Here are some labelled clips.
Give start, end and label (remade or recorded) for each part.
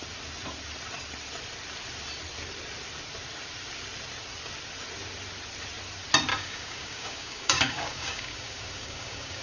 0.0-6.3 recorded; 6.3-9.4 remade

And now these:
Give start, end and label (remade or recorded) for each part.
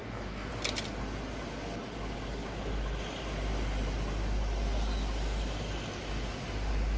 0.0-0.5 remade; 0.5-7.0 recorded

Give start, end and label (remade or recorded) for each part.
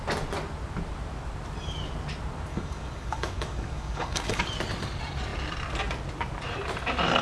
0.0-2.5 recorded; 2.5-4.5 remade; 4.5-7.2 recorded